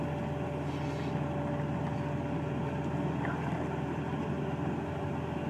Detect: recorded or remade recorded